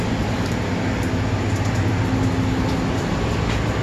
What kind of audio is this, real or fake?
real